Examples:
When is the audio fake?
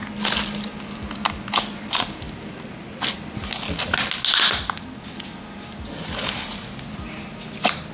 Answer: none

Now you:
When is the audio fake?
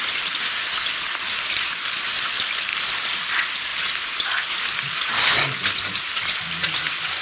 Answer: none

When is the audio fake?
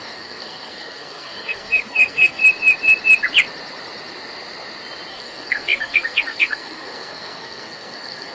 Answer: 0.0-2.4 (codec, SNAC); 5.1-8.3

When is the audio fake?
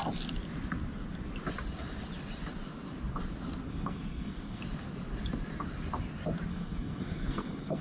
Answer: 3.7-4.6 (codec, SNAC); 6.5-7.8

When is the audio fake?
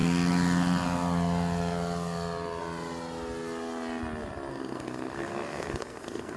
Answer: 4.5-6.4 (codec, SNAC)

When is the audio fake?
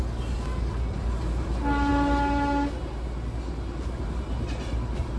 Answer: none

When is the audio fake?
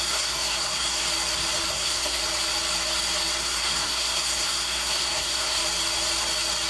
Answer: 0.0-1.0 (codec, SNAC); 1.7-2.2; 3.4-5.6